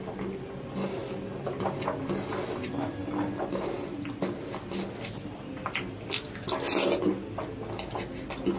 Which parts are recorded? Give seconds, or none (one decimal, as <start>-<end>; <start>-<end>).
0.0-8.6